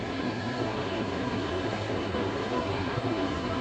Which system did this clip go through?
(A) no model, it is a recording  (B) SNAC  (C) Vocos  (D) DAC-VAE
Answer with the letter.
B